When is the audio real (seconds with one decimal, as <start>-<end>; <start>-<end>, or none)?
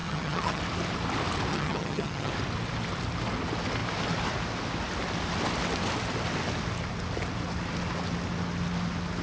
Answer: 0.6-1.5; 2.3-9.2